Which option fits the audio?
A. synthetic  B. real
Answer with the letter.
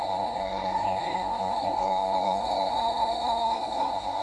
A